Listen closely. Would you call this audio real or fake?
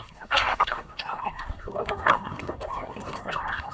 fake